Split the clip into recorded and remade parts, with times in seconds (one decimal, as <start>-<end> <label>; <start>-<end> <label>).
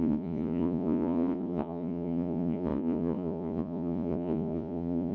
0.0-5.1 remade